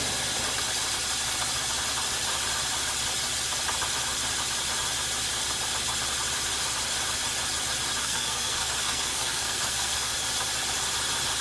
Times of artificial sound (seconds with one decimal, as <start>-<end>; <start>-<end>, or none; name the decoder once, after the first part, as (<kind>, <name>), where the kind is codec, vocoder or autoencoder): 8.0-10.1 (codec, SNAC)